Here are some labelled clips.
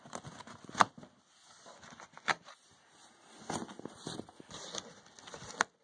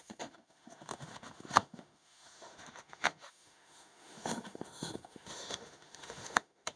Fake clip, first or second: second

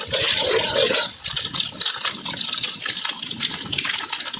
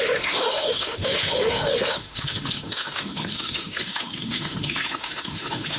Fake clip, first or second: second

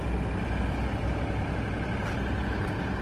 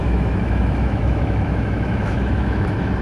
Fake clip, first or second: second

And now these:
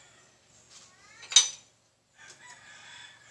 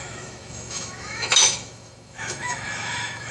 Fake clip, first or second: second